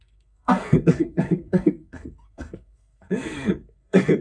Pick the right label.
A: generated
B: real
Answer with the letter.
A